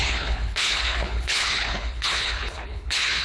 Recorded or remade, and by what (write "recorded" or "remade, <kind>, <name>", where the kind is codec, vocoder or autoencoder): remade, codec, HILCodec